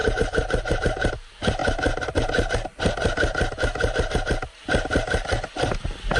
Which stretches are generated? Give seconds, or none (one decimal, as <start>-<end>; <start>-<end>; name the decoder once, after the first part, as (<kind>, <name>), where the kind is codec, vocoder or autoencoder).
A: 0.0-1.1 (vocoder, BigVGAN v2)